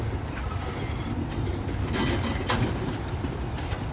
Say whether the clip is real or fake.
real